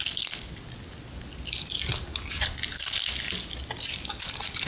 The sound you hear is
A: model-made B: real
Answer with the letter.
B